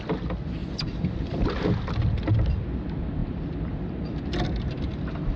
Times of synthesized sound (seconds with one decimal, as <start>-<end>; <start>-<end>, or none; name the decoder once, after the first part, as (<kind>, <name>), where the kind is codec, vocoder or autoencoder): 0.6-1.5 (vocoder, BigVGAN v2); 3.2-4.2